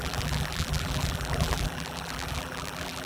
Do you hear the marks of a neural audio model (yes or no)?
yes